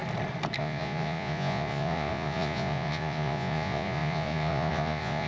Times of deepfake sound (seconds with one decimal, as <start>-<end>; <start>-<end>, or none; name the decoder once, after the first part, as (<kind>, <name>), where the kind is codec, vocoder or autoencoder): 0.6-5.3 (vocoder, Vocos)

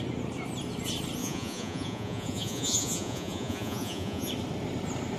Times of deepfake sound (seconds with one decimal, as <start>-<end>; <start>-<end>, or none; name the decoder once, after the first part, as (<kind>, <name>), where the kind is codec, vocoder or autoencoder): 1.2-4.3 (vocoder, Vocos)

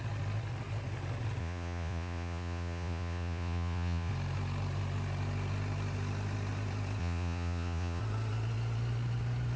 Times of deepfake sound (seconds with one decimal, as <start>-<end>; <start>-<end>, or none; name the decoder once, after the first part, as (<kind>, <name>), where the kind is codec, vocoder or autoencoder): 1.4-4.1 (vocoder, Vocos); 7.0-8.0

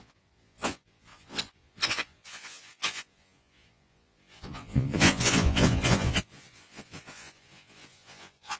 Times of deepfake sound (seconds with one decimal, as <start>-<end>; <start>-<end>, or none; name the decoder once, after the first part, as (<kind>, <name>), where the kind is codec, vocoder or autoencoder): 0.0-8.6 (vocoder, Vocos)

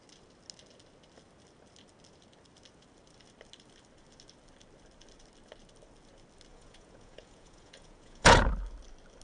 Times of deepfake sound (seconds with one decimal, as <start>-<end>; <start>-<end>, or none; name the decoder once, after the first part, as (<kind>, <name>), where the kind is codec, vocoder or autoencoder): 6.5-8.5 (vocoder, Vocos)

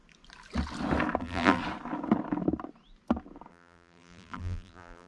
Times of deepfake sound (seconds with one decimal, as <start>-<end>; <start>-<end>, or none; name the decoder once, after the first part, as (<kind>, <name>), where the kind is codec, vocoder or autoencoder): 1.2-1.6 (vocoder, BigVGAN v2); 3.5-5.1

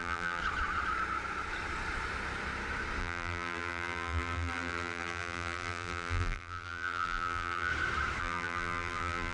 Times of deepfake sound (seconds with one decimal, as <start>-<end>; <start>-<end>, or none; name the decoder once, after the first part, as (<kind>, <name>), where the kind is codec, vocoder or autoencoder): 0.0-0.4 (vocoder, BigVGAN v2); 3.0-7.7; 8.2-9.3

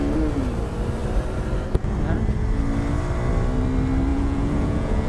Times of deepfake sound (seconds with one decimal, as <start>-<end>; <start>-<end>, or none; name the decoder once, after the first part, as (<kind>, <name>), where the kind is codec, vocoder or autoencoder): 4.1-5.1 (vocoder, Vocos)